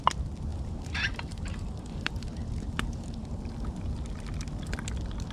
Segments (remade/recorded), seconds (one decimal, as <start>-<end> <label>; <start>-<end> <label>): 0.0-0.5 recorded; 0.5-3.4 remade; 3.4-5.3 recorded